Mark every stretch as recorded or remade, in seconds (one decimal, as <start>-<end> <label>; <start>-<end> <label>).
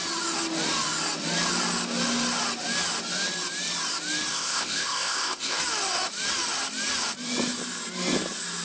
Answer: 0.0-4.3 recorded; 4.3-5.6 remade; 5.6-8.6 recorded